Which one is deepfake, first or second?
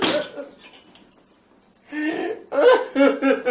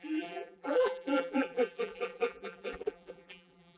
second